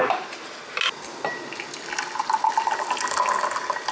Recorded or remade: recorded